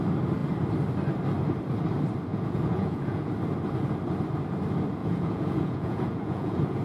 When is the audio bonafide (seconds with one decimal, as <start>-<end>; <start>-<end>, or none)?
0.0-2.3; 3.3-5.0